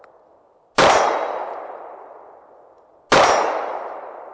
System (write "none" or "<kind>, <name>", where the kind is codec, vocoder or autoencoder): none